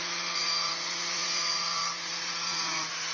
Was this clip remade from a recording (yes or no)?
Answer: yes